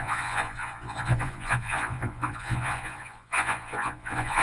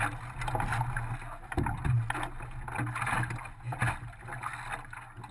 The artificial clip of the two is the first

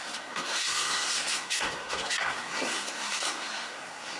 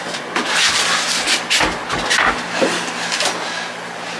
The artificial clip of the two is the first